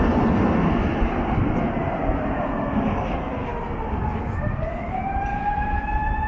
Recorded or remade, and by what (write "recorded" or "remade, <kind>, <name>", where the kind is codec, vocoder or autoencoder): recorded